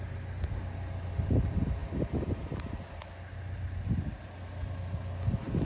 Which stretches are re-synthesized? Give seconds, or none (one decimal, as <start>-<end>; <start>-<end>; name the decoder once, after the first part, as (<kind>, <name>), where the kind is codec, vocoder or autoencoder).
none

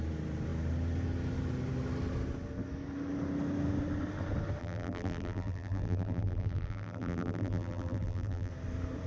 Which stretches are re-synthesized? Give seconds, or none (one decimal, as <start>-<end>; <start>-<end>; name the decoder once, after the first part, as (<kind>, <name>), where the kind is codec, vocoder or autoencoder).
4.6-8.5 (vocoder, BigVGAN v2)

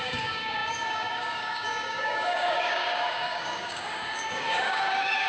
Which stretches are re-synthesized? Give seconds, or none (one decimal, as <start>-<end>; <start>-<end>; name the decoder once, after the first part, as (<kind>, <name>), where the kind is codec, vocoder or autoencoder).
0.0-5.3 (codec, DAC)

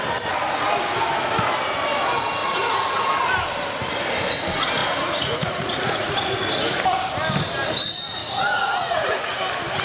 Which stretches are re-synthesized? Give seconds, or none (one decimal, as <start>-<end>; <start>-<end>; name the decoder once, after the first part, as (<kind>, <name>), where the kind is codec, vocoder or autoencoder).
2.4-3.2 (vocoder, Vocos); 4.8-6.5; 8.2-9.3

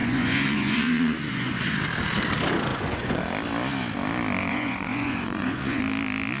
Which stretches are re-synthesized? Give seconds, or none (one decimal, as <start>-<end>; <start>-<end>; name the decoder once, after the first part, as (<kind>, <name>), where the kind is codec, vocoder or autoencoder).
0.0-1.8 (vocoder, Vocos); 2.7-3.2; 4.4-5.8

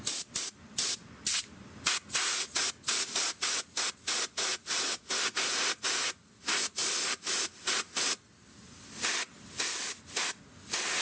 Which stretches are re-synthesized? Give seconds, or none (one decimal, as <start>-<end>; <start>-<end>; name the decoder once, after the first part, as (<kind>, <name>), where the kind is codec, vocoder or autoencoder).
4.5-5.1 (vocoder, Vocos)